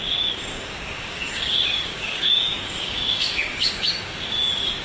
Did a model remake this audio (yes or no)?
yes